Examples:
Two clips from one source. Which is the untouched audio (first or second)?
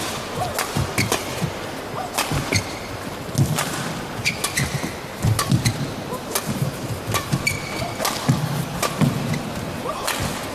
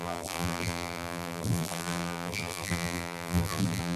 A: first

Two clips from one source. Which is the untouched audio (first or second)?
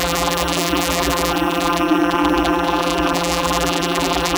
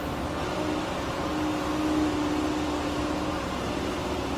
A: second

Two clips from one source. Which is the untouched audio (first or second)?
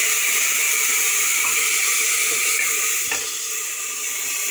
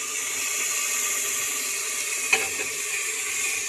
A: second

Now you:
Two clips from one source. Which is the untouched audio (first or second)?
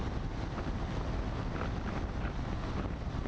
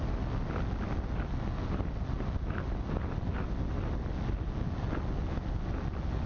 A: second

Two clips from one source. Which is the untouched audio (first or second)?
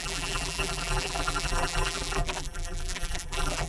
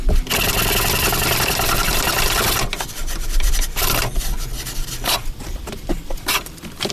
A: second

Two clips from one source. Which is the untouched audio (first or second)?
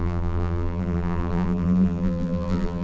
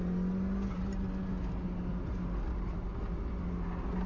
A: second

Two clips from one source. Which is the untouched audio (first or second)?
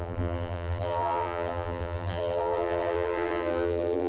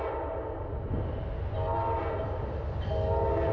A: second